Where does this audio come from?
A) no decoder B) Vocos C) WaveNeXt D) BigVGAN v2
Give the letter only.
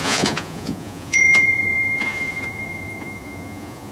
B